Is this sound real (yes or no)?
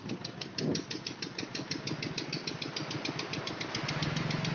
yes